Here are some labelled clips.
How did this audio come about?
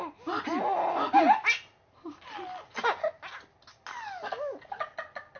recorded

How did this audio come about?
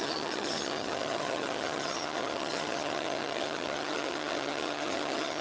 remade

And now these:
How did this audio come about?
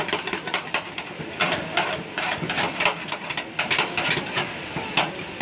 recorded